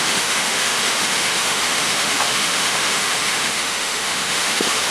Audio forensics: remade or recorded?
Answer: remade